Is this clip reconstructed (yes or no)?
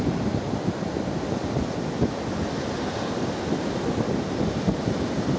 no